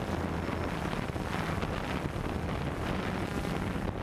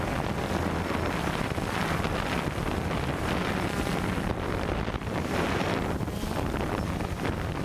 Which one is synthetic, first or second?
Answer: second